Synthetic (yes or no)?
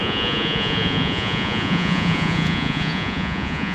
yes